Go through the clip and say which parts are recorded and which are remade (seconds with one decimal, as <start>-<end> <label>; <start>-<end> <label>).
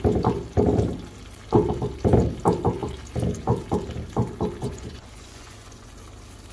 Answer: 0.0-4.6 recorded; 4.6-6.0 remade; 6.0-6.5 recorded